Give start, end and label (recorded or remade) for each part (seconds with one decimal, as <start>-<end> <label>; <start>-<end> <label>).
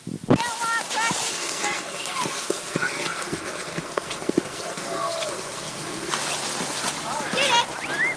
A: 0.0-1.3 recorded; 1.3-6.1 remade; 6.1-8.2 recorded